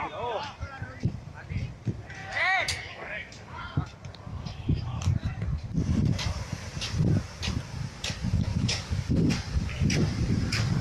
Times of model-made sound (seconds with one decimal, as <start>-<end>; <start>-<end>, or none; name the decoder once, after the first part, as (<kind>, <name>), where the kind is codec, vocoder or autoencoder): 2.2-3.6 (codec, DAC); 4.3-5.0; 8.5-9.3